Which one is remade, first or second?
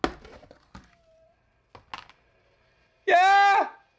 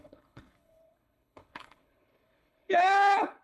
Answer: second